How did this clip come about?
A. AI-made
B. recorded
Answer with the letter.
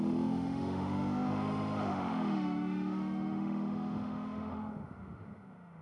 A